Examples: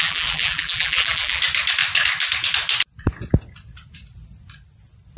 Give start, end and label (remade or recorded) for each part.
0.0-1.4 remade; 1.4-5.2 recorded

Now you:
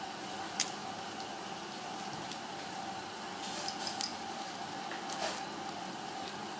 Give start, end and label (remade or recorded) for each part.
0.0-0.8 recorded; 0.8-3.1 remade; 3.1-4.1 recorded; 4.1-4.6 remade; 4.6-6.6 recorded

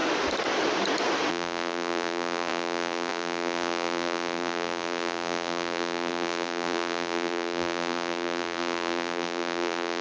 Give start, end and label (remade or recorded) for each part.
0.0-1.3 recorded; 1.3-10.0 remade

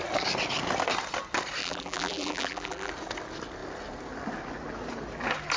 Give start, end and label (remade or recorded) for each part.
0.0-1.6 recorded; 1.6-2.9 remade; 2.9-5.6 recorded

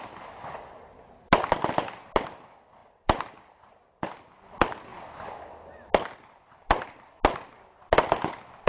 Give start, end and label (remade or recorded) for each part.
0.0-2.8 recorded; 2.8-3.6 remade; 3.6-8.7 recorded

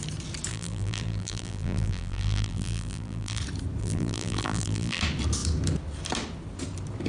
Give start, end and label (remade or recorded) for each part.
0.0-0.5 recorded; 0.5-3.4 remade; 3.4-3.8 recorded; 3.8-5.0 remade; 5.0-7.1 recorded